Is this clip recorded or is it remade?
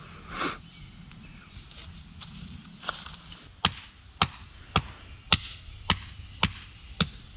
recorded